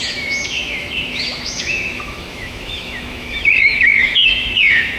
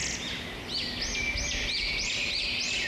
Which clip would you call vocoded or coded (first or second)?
first